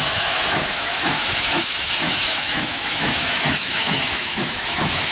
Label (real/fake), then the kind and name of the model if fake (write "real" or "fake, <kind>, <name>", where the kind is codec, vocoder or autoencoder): fake, autoencoder, DAC-VAE